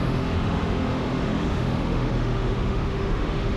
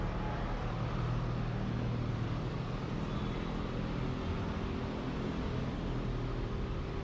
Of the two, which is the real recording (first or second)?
second